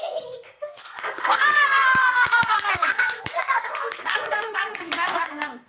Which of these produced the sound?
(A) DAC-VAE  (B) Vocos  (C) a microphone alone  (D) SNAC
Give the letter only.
D